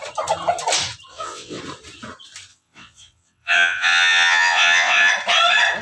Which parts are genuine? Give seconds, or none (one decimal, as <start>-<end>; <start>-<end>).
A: 0.0-1.1; 1.6-2.5; 5.1-5.8